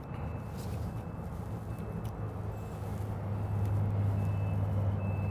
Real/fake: real